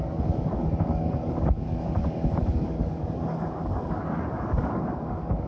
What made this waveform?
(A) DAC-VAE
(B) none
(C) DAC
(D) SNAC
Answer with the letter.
C